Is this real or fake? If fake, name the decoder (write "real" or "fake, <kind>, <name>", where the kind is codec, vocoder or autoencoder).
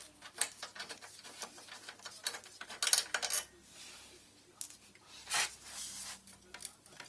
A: real